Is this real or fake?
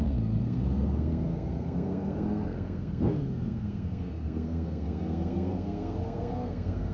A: fake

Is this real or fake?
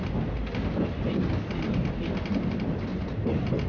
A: real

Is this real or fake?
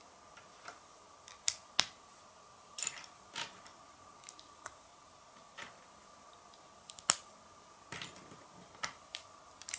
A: real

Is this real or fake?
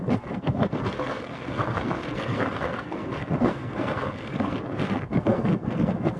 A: fake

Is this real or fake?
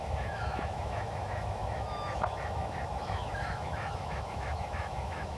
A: fake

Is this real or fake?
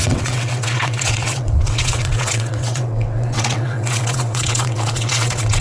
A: fake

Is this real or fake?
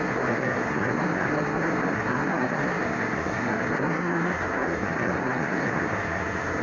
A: fake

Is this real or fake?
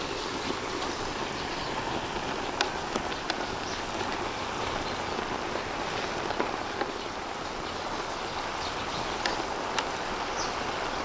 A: real